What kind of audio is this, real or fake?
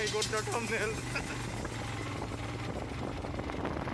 real